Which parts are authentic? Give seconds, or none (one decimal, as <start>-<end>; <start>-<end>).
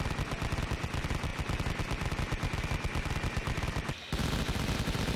0.0-5.2